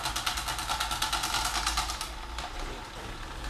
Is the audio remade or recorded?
recorded